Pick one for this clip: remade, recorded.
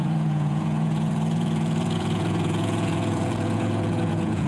remade